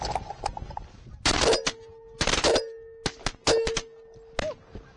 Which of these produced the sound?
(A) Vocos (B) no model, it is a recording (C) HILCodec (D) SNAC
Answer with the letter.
B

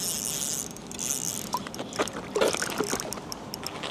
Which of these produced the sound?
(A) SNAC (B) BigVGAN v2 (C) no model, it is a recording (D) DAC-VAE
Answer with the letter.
C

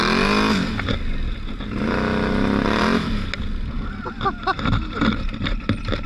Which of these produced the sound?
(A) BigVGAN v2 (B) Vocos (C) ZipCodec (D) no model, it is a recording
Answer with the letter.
D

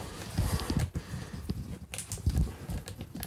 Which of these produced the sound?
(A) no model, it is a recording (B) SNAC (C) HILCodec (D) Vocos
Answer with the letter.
A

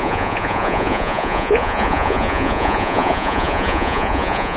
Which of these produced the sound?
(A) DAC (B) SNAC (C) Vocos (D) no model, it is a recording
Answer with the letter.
C